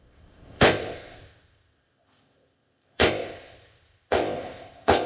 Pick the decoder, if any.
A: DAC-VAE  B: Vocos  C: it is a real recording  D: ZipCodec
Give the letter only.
D